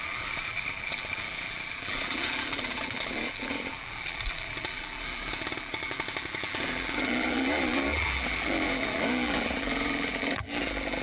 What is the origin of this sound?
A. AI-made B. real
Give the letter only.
A